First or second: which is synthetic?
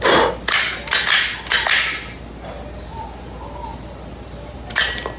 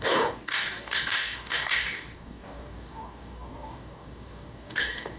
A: second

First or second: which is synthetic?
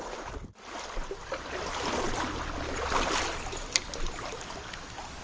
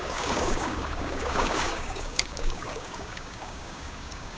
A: second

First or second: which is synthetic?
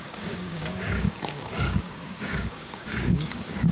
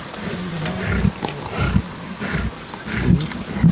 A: first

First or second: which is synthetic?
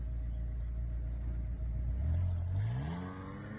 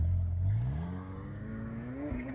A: second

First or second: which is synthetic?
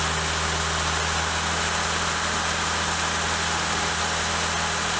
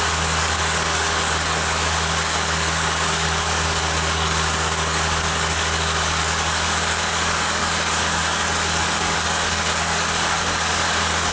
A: second